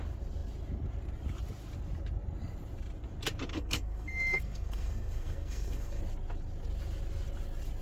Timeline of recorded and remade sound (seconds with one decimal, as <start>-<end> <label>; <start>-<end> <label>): 0.0-3.5 recorded; 3.5-6.0 remade; 6.0-7.8 recorded